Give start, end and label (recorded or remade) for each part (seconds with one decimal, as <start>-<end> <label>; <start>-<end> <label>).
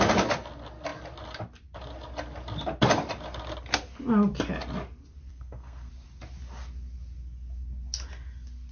0.0-5.3 recorded; 5.3-5.9 remade; 5.9-8.7 recorded